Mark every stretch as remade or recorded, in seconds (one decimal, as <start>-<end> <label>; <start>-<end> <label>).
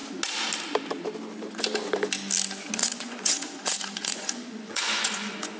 0.0-2.8 recorded; 2.8-5.6 remade